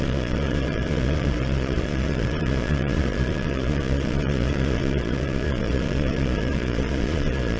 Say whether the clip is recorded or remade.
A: remade